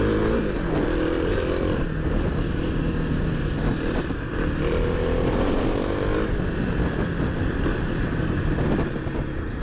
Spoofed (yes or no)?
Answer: no